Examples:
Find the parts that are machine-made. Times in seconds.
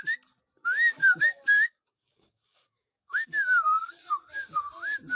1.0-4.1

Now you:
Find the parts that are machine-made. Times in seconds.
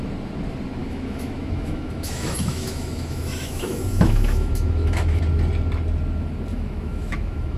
0.8-5.2; 6.5-7.6